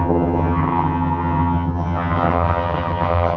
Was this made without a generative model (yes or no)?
no